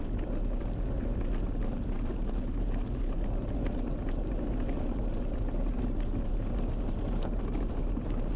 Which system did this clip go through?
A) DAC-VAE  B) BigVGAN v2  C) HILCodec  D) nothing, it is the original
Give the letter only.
D